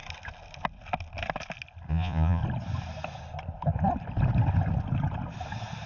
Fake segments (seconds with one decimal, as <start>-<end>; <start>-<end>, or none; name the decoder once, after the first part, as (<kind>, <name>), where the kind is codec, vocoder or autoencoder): 1.9-2.4 (vocoder, Vocos)